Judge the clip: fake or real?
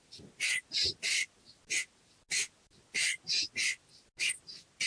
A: real